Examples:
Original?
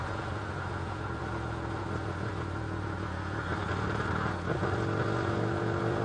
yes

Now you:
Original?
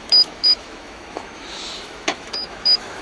no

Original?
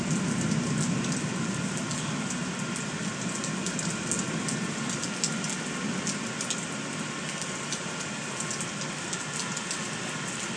yes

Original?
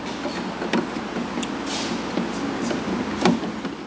yes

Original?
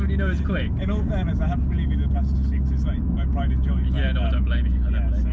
yes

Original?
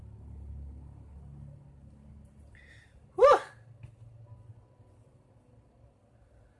yes